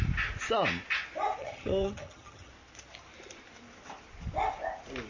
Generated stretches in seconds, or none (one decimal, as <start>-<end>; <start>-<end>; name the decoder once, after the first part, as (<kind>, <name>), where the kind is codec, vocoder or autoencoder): 1.4-2.5 (vocoder, HiFi-GAN)